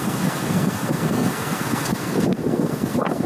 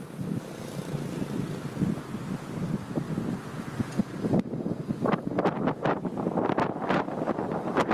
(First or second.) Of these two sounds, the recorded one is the second